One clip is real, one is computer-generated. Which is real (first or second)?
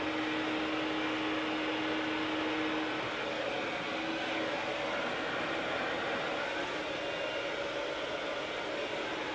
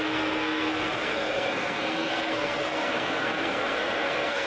first